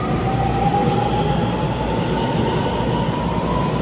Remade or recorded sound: recorded